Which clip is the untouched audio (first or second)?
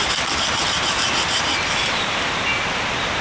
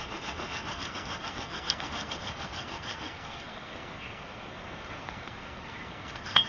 first